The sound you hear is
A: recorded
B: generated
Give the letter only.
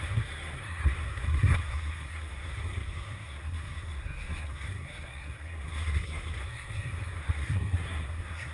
B